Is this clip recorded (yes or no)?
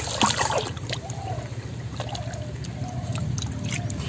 yes